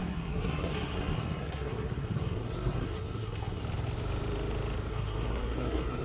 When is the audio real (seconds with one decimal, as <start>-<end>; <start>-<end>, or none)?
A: 3.6-4.9